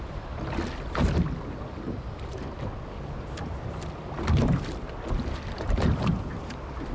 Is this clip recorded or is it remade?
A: recorded